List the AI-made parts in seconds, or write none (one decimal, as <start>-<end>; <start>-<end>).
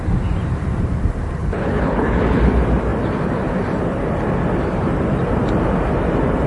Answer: 1.4-2.4